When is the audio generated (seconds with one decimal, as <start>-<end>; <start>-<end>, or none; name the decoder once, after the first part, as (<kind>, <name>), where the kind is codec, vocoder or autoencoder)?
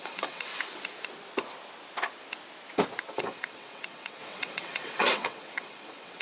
0.0-0.5 (vocoder, WaveNeXt); 3.1-6.2